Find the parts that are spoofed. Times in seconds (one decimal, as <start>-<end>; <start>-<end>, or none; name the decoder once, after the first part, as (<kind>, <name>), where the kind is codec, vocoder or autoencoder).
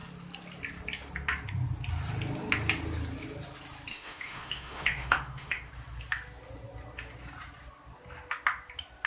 3.9-5.7 (autoencoder, DAC-VAE)